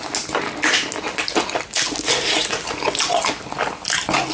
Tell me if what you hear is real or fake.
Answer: real